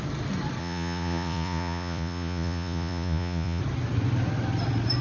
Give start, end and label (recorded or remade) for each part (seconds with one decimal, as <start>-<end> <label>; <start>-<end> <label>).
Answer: 0.0-0.6 recorded; 0.6-3.6 remade; 3.6-5.0 recorded